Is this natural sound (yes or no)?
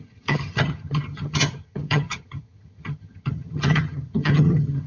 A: no